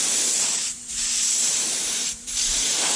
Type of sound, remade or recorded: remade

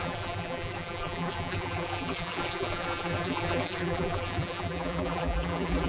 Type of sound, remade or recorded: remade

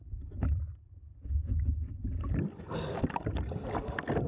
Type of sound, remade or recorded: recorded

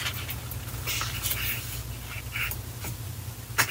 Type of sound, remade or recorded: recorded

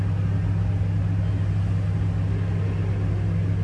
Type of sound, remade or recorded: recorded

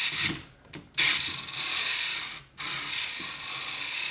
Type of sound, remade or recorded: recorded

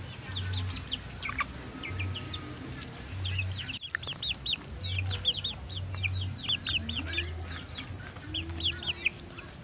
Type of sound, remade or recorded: recorded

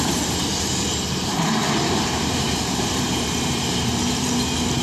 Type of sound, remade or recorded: remade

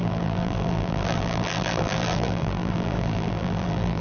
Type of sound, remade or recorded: remade